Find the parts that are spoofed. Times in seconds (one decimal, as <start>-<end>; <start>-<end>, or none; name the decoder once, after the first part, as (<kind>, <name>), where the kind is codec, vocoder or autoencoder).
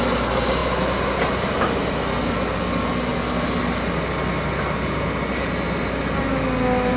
none